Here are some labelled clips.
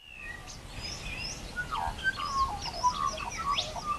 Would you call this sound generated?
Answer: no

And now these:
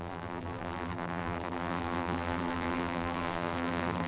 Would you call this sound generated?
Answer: yes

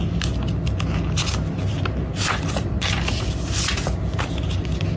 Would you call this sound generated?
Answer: no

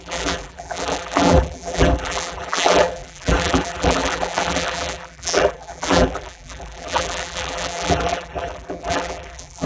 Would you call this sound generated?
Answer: yes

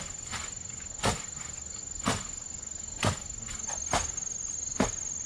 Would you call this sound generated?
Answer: no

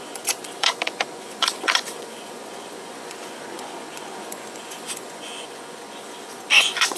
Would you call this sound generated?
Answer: yes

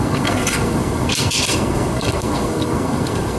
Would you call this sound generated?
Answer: yes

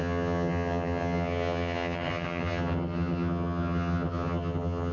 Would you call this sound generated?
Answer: yes